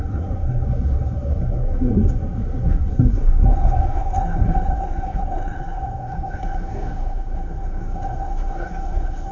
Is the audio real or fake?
fake